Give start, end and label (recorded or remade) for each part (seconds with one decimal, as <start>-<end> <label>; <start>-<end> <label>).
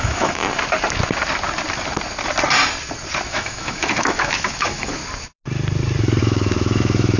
0.0-0.4 remade; 0.4-3.3 recorded; 3.3-5.0 remade; 5.0-6.2 recorded; 6.2-7.2 remade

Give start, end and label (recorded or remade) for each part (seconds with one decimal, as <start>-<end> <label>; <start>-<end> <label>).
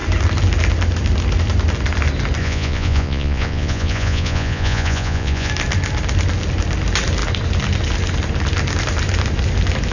0.0-2.4 recorded; 2.4-5.5 remade; 5.5-9.9 recorded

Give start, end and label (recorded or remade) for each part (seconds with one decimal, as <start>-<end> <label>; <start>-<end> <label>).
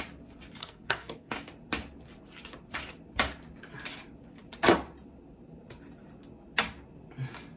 0.0-0.6 recorded; 0.6-1.3 remade; 1.3-7.6 recorded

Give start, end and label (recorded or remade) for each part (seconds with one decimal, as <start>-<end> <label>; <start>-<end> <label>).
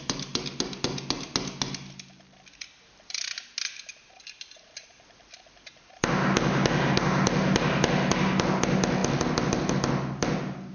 0.0-10.7 recorded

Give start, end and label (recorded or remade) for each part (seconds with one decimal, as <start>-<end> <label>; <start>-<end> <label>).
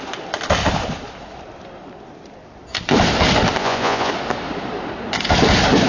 0.0-3.6 recorded; 3.6-4.1 remade; 4.1-5.9 recorded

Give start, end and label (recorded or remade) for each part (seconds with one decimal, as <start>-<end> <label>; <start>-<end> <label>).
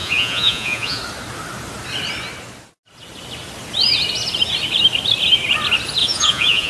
0.0-1.0 remade; 1.0-6.0 recorded; 6.0-6.7 remade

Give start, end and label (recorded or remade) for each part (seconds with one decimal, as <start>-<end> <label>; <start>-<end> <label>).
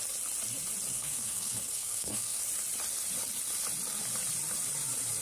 0.0-0.9 recorded; 0.9-2.4 remade; 2.4-5.2 recorded